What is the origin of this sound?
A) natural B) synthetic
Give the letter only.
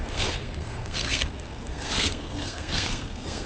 B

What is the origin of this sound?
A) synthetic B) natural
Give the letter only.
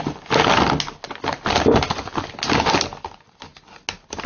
B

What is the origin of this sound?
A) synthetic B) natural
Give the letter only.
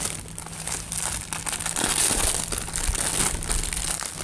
B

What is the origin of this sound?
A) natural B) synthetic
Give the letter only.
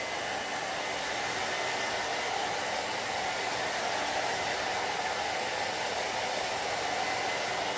A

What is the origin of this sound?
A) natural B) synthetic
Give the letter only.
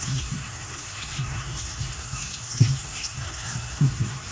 B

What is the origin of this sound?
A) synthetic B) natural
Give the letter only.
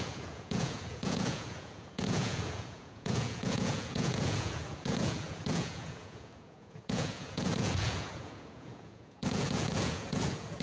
A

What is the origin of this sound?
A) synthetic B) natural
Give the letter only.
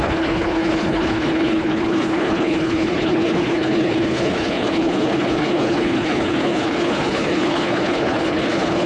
A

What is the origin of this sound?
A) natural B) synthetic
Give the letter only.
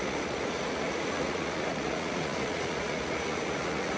B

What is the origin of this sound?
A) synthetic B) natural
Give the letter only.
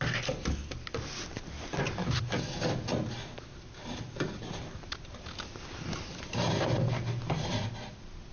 B